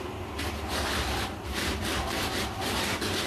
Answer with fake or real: fake